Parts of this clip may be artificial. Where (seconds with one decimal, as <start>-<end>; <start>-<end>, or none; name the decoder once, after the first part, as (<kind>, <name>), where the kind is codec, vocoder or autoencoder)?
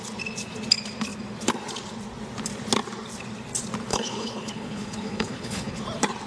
3.9-5.8 (codec, HILCodec)